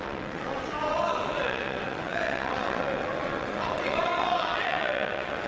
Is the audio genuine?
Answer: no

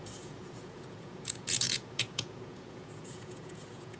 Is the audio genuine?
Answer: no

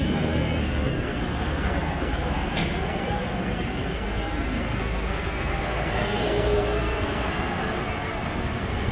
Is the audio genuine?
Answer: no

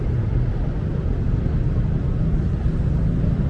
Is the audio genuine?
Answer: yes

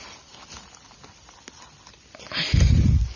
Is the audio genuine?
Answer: no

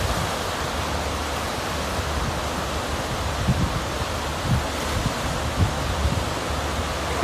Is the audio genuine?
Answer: yes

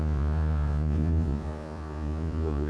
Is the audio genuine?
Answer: no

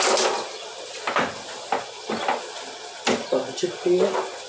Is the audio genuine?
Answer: yes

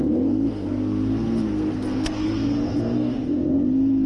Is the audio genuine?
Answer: no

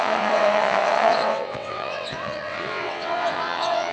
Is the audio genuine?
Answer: no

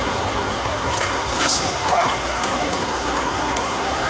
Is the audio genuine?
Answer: no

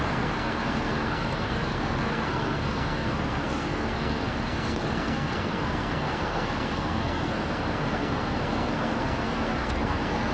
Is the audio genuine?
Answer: no